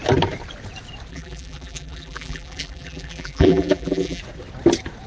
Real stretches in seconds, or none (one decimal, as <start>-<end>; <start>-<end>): 0.0-1.1; 4.2-5.1